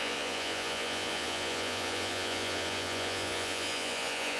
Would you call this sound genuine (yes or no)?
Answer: no